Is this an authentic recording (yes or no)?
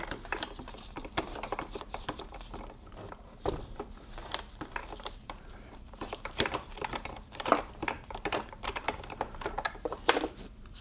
no